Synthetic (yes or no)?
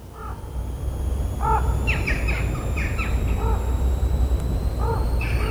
no